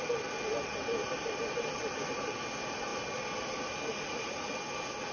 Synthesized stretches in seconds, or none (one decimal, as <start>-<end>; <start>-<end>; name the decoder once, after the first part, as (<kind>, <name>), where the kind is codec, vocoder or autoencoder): 3.9-4.5 (vocoder, Vocos)